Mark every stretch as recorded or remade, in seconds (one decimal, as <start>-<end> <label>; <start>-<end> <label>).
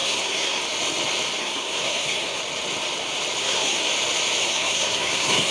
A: 0.0-0.6 remade; 0.6-1.4 recorded; 1.4-2.4 remade; 2.4-3.4 recorded; 3.4-3.9 remade; 3.9-4.4 recorded; 4.4-5.5 remade